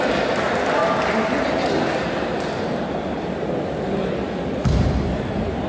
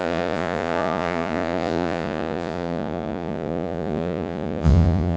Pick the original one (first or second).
first